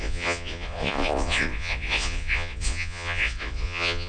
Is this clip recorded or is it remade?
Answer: remade